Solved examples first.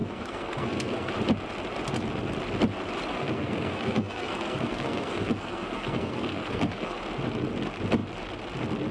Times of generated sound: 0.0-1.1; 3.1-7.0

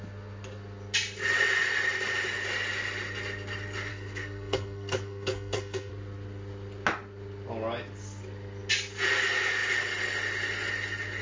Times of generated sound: 3.9-5.9

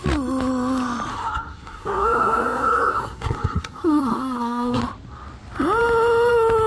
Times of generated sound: 1.1-4.8

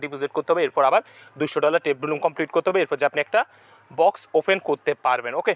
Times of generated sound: none